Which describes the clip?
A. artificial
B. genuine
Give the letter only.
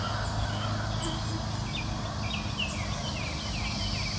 B